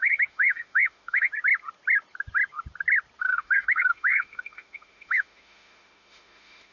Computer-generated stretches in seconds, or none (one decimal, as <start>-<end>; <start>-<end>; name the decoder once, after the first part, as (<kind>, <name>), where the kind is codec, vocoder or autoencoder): 0.0-1.3 (autoencoder, DAC-VAE); 3.2-6.7